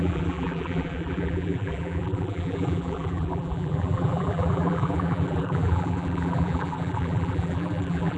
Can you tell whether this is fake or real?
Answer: fake